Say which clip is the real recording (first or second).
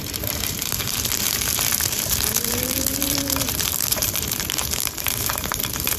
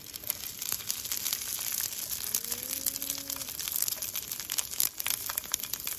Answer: second